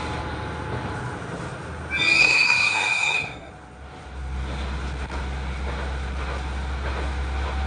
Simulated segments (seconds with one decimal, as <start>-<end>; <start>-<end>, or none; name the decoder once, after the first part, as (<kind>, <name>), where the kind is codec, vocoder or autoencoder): 2.2-3.5 (codec, SNAC)